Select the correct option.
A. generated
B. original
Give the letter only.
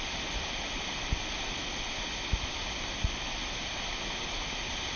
B